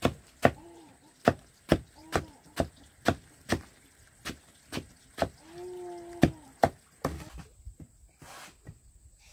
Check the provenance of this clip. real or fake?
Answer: real